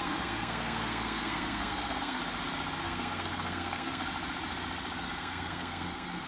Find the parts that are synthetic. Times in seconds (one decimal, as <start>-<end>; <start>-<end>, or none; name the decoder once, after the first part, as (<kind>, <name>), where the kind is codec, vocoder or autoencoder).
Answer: 0.0-2.2 (codec, SNAC); 2.8-4.1; 5.0-6.3